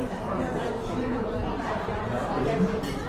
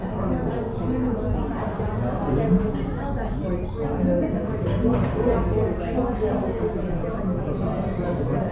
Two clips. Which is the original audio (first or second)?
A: second